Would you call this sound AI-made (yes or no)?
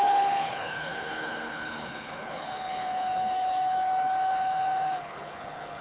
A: yes